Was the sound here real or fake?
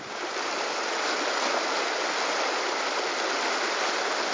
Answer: real